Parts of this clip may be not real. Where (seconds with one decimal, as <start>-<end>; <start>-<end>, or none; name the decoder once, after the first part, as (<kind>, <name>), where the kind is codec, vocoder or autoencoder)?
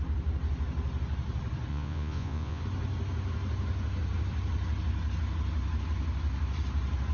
1.7-2.6 (vocoder, Vocos)